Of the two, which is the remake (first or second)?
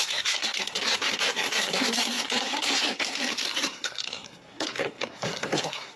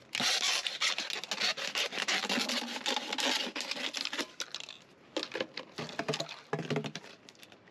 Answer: first